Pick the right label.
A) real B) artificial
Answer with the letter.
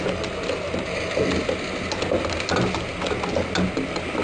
A